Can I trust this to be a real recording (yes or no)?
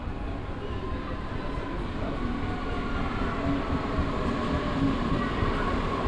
yes